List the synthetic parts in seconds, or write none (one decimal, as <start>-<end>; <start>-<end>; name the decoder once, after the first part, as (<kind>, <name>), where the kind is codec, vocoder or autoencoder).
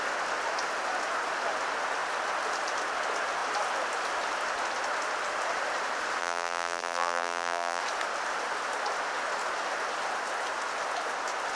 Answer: 6.2-7.8 (vocoder, BigVGAN v2)